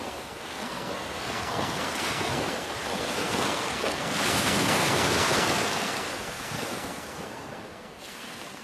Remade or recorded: remade